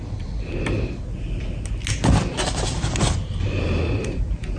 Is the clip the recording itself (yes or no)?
yes